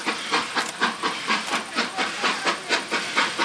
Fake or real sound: real